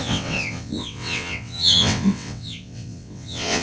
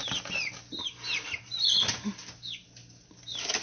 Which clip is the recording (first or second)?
second